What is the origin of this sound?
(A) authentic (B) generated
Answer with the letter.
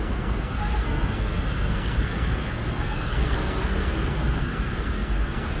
B